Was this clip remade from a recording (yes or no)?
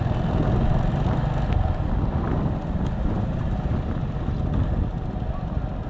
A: no